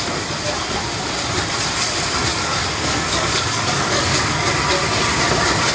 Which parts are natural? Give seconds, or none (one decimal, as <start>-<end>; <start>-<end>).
0.0-2.3; 4.5-5.7